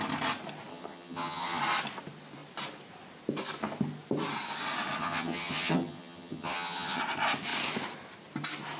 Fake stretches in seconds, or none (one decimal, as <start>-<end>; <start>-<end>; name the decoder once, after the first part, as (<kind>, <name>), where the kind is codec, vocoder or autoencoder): 0.7-1.6 (vocoder, HiFi-GAN); 5.0-7.0